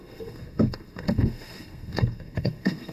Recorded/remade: remade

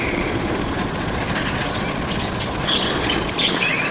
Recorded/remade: remade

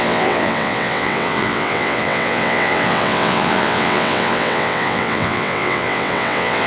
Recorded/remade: remade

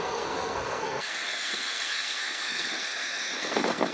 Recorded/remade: remade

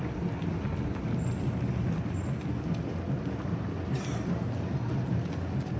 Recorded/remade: recorded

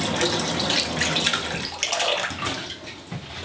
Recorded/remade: recorded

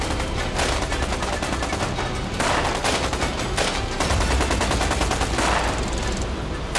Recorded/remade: recorded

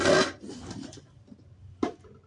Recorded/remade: recorded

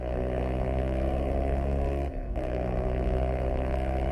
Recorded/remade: remade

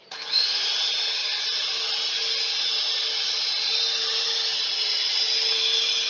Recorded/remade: recorded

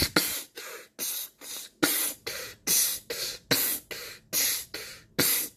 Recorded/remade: recorded